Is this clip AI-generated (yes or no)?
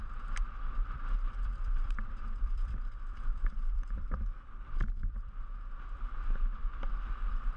yes